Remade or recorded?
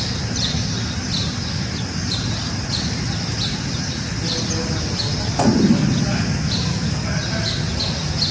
recorded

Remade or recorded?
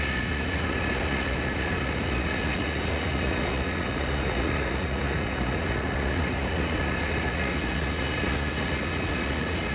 remade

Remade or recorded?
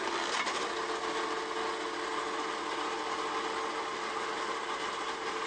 recorded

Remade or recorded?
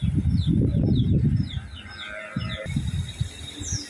recorded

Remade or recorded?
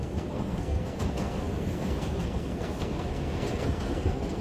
remade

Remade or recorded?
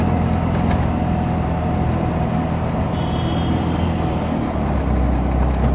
recorded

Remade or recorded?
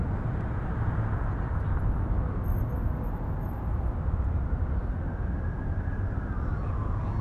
recorded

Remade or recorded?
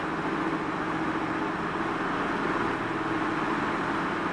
recorded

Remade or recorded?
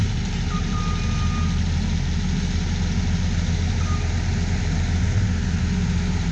recorded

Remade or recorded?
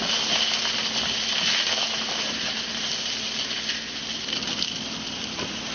recorded